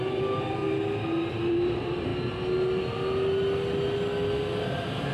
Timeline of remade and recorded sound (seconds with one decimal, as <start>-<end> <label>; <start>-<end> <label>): 0.0-0.6 remade; 0.6-1.3 recorded; 1.3-2.1 remade; 2.1-4.6 recorded; 4.6-5.1 remade